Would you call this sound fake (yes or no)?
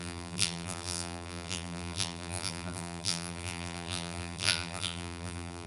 yes